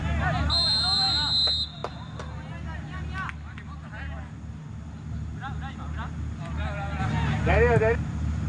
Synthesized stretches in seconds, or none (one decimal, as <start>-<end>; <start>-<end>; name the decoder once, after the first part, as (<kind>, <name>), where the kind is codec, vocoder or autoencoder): none